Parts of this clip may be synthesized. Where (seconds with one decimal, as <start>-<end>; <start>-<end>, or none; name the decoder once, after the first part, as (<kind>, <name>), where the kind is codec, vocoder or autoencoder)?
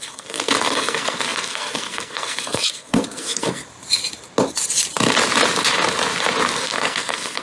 0.0-3.6 (codec, SNAC); 6.6-7.4